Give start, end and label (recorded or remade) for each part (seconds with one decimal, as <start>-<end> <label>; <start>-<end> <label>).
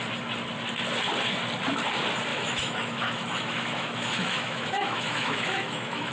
0.0-2.3 recorded; 2.3-6.1 remade